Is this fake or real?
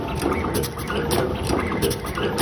fake